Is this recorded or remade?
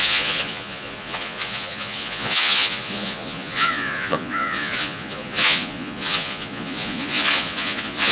remade